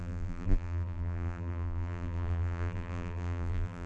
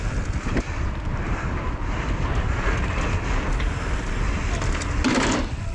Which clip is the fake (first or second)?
first